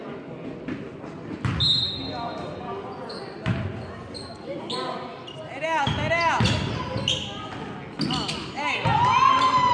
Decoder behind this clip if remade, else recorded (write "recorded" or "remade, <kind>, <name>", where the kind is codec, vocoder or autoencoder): recorded